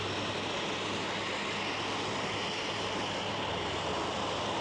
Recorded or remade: recorded